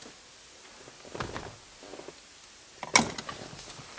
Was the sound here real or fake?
real